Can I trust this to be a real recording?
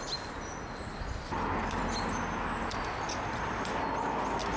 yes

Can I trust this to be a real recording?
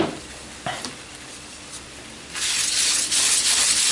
yes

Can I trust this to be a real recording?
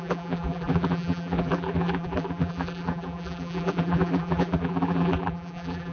no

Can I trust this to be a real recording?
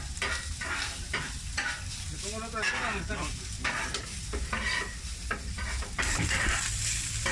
no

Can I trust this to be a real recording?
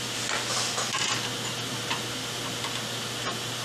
yes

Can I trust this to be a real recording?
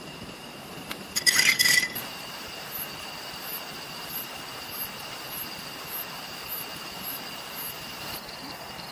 no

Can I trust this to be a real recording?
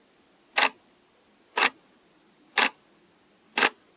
yes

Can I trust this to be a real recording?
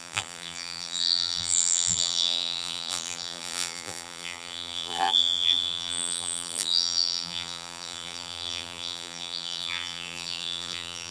no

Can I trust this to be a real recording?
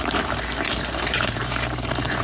no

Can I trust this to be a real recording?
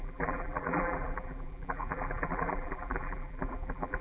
no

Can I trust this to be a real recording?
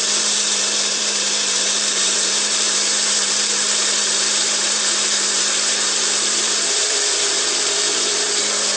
no